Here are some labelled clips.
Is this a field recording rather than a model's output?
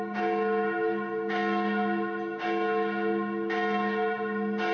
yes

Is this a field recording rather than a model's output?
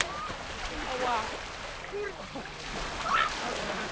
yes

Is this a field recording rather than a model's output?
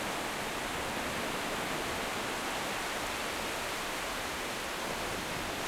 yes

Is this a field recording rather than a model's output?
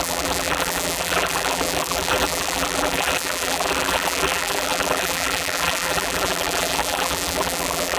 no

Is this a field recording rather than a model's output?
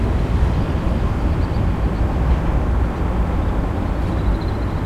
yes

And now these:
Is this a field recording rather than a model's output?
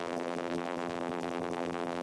no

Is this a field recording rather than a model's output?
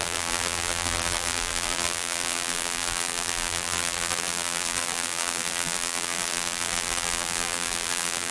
no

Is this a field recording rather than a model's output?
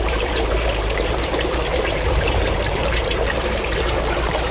no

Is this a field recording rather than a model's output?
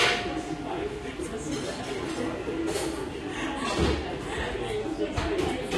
yes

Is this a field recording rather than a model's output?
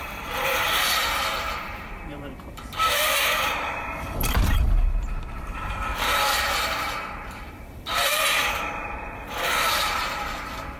no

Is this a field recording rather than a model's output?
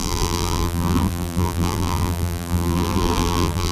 no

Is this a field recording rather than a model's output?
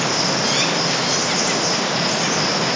yes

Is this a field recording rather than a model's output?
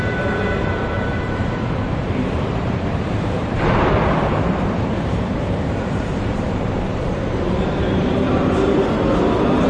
no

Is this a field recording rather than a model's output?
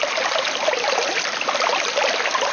yes